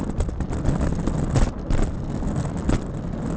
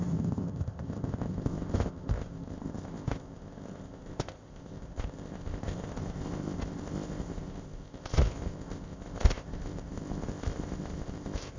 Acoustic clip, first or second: first